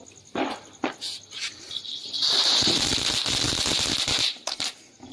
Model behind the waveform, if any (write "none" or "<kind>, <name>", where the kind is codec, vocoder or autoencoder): none